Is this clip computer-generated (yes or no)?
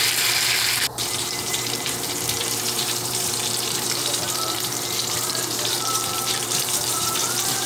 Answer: yes